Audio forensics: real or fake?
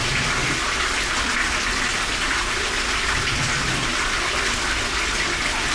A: real